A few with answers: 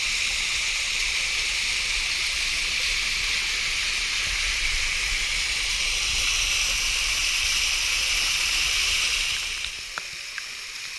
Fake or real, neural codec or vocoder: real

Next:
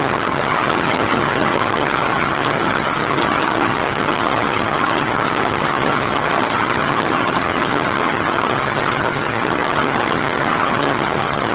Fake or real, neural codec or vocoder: fake, vocoder, HiFi-GAN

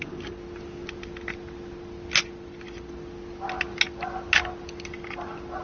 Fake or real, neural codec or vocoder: real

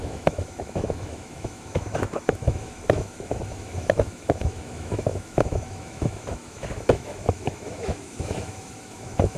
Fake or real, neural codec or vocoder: fake, autoencoder, DAC-VAE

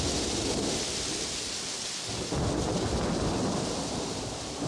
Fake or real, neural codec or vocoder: real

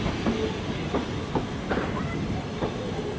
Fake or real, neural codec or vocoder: real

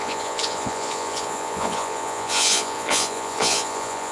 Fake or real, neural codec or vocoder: fake, vocoder, Vocos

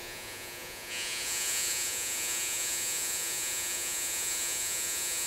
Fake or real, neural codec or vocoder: fake, vocoder, Vocos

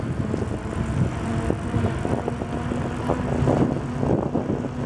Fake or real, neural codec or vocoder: real